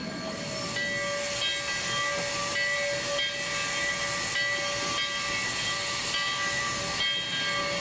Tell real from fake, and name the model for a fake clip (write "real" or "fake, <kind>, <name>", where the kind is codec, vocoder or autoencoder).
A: real